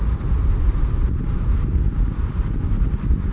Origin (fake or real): real